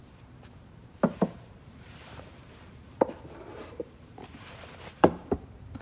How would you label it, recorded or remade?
remade